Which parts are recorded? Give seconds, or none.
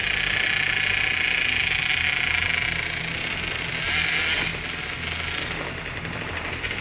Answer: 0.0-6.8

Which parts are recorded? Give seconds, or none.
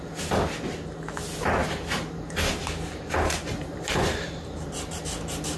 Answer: 0.0-1.6; 4.7-5.6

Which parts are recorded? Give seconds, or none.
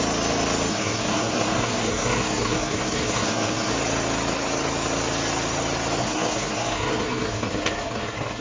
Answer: 0.0-0.7; 3.7-6.0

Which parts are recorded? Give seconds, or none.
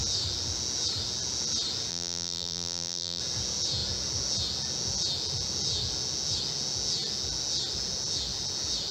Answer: 0.0-1.9; 3.2-8.9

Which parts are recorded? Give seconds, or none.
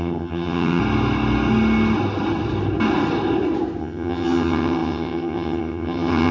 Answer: 0.8-3.8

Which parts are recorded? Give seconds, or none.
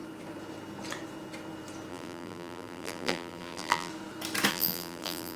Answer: 0.0-1.9; 3.9-4.5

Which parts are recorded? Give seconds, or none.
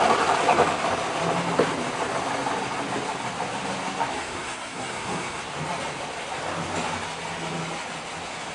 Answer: 0.0-4.1; 5.4-8.5